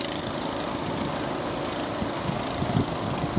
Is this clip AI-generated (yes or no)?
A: no